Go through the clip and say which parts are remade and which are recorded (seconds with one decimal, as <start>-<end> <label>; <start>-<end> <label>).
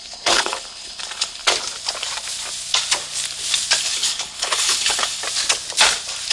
0.0-1.4 remade; 1.4-3.8 recorded; 3.8-5.2 remade; 5.2-6.3 recorded